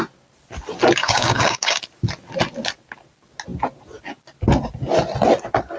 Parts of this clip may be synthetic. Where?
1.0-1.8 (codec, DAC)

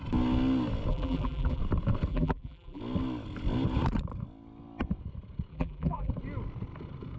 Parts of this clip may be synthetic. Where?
0.9-1.6 (vocoder, BigVGAN v2); 2.1-2.8; 5.5-6.1

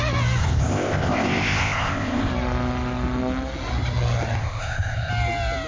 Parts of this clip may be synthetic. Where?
0.4-2.3 (codec, ZipCodec); 4.4-5.1

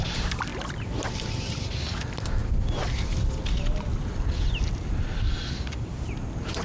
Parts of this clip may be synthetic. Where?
none